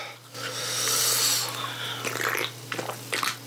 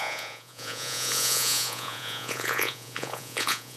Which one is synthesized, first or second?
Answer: second